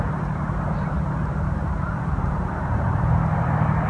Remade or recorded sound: remade